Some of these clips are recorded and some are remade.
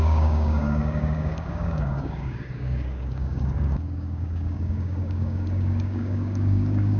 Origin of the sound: remade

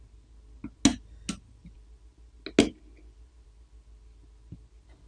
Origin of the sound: recorded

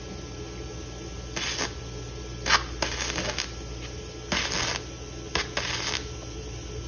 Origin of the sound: recorded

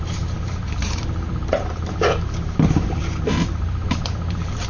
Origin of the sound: remade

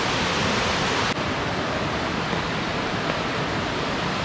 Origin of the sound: recorded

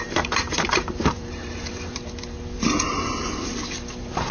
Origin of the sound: remade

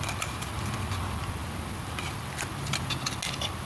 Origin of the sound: recorded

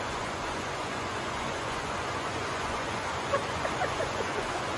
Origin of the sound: remade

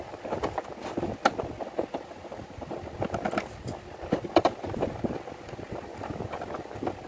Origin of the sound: recorded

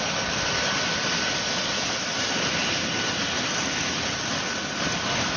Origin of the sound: recorded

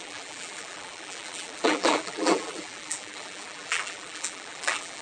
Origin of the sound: remade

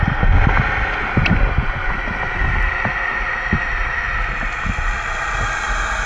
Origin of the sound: recorded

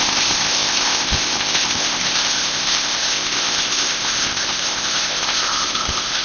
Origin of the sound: remade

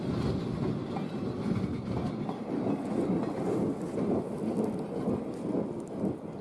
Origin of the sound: recorded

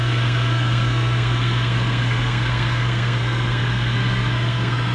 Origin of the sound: remade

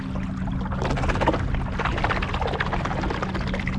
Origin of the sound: recorded